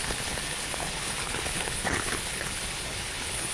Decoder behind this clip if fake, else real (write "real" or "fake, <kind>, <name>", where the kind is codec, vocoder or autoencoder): fake, codec, HILCodec